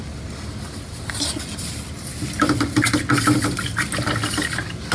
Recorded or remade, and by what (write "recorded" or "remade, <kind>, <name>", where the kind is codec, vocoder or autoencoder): recorded